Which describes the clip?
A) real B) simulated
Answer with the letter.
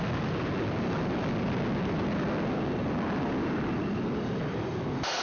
A